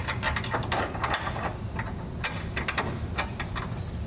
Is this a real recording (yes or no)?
yes